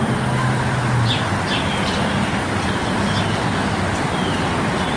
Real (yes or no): yes